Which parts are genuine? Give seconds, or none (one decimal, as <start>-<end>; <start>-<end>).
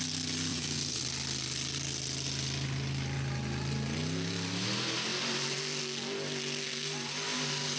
0.0-0.5; 1.0-7.8